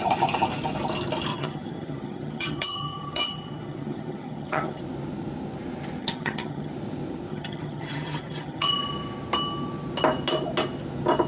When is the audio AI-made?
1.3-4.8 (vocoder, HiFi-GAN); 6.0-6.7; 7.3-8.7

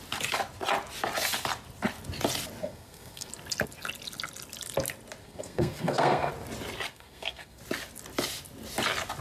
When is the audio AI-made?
2.6-3.3 (codec, SNAC); 5.2-6.3; 6.9-7.6